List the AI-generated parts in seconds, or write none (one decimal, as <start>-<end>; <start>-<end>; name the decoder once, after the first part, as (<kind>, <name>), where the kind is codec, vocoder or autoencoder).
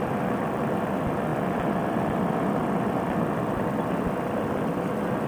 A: none